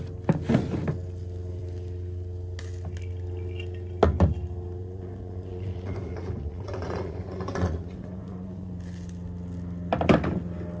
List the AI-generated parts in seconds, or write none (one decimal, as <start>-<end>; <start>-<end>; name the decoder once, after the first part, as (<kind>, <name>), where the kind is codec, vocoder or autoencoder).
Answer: 4.8-8.7 (vocoder, Vocos)